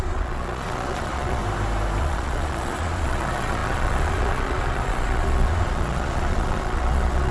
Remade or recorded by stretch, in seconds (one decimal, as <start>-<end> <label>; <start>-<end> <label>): 0.0-1.4 remade; 1.4-2.0 recorded; 2.0-7.3 remade